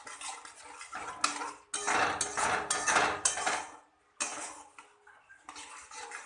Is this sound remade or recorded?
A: recorded